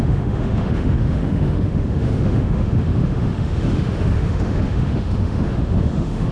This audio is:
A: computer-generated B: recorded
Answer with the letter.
A